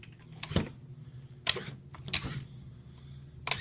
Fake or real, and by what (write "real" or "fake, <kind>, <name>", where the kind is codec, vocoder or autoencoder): real